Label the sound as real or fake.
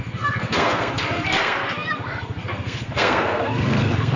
fake